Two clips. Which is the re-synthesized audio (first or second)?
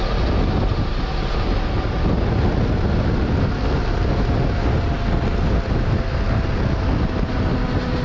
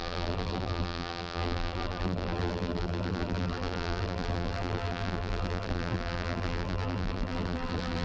second